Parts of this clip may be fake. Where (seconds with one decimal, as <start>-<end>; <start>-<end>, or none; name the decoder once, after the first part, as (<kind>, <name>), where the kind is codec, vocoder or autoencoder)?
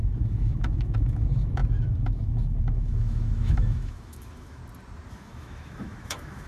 0.0-4.6 (autoencoder, DAC-VAE); 5.1-6.5